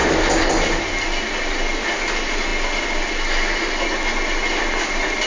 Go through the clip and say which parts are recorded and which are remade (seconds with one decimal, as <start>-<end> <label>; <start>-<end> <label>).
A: 0.0-5.3 recorded